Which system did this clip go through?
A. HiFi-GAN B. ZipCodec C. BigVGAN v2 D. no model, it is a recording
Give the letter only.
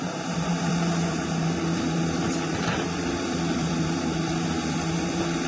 C